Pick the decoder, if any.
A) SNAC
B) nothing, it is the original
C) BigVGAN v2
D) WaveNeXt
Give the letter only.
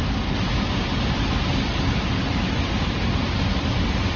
B